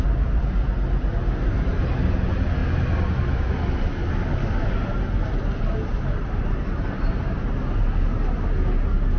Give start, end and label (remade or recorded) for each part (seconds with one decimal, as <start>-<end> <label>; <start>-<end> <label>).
0.0-9.2 recorded